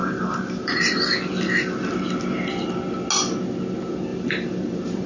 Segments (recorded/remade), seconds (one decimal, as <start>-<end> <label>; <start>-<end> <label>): 0.0-1.0 remade; 1.0-4.1 recorded; 4.1-5.1 remade